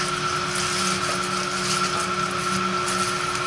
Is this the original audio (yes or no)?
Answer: yes